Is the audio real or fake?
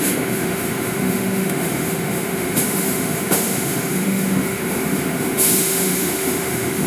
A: fake